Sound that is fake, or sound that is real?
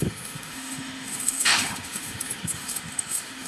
fake